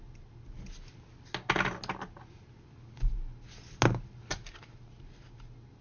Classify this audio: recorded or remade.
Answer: recorded